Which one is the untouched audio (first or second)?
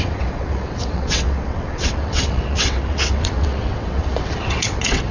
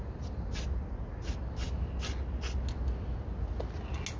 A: second